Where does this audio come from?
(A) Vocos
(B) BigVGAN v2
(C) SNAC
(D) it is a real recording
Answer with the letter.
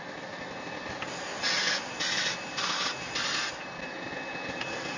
D